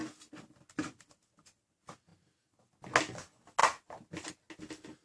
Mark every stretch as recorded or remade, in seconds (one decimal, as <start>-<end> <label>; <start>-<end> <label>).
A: 0.0-5.0 recorded